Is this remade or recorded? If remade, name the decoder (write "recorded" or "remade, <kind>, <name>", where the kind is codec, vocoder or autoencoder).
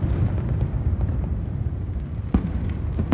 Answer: recorded